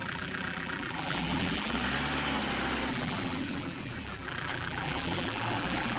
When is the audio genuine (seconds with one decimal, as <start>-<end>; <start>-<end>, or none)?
1.8-2.9